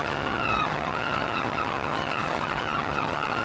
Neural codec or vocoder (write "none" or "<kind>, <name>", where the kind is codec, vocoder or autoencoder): vocoder, HiFi-GAN